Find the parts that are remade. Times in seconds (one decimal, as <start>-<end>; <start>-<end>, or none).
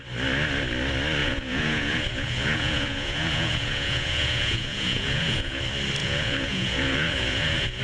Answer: 1.2-5.6; 6.0-7.8